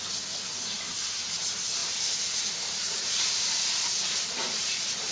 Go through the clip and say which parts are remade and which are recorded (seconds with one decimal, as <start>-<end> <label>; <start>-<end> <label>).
0.0-1.8 recorded; 1.8-5.1 remade